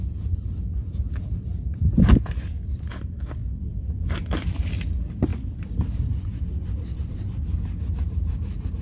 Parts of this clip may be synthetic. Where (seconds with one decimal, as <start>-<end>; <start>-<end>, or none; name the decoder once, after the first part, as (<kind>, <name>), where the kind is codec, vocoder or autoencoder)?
3.4-4.7 (vocoder, BigVGAN v2); 5.3-7.9